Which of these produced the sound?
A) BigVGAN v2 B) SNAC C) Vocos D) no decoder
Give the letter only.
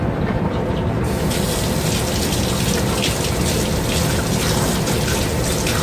D